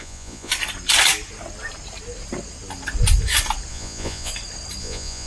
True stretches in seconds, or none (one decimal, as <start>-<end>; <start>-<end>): 0.5-3.7; 4.3-4.8